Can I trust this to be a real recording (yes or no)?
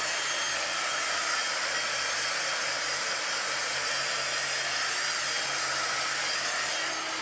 yes